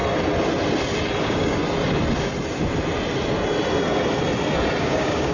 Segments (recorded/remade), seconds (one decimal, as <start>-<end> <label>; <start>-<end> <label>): 0.0-1.2 recorded; 1.2-1.6 remade; 1.6-4.8 recorded; 4.8-5.3 remade